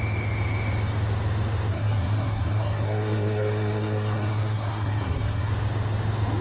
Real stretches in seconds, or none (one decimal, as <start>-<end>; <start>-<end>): 0.0-1.7; 5.5-6.4